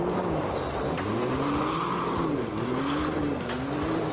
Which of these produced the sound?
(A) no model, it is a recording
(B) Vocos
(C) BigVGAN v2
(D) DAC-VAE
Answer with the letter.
A